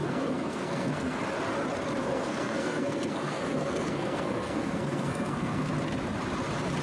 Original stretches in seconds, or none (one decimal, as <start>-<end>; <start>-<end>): 1.2-2.0; 5.7-6.8